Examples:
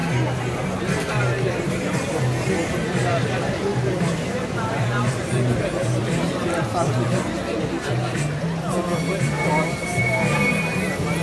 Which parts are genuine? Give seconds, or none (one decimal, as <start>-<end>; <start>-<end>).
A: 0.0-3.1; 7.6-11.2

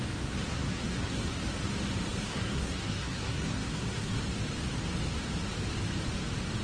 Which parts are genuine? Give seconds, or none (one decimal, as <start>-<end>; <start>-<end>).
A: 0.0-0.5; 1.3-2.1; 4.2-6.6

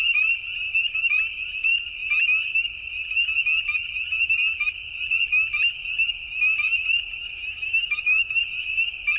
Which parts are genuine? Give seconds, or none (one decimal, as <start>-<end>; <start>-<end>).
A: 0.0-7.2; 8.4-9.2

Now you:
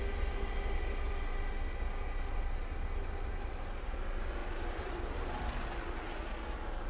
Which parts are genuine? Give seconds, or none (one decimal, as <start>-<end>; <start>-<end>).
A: 0.0-6.9

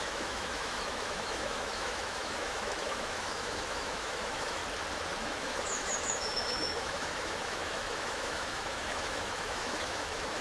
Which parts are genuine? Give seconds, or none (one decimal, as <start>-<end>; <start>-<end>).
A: 4.6-5.2